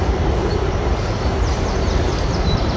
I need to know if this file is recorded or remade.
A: remade